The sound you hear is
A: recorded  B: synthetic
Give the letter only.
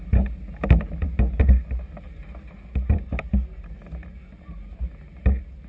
A